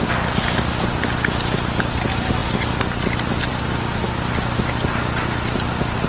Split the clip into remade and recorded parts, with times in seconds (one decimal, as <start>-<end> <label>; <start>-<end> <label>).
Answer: 0.0-6.1 recorded